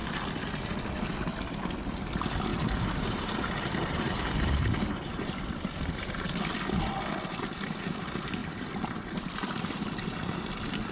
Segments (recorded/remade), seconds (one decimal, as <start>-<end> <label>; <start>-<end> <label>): 0.0-2.5 recorded; 2.5-6.3 remade; 6.3-8.4 recorded; 8.4-9.3 remade; 9.3-10.9 recorded